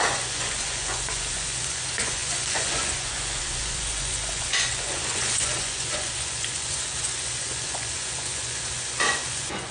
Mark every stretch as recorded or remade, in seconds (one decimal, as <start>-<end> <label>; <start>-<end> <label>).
0.0-9.7 remade